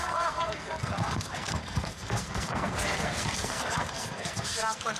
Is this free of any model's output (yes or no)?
no